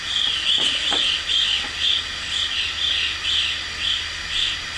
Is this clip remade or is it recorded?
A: recorded